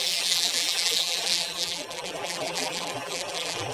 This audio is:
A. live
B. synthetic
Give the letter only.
B